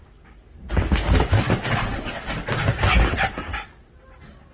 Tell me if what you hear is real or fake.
real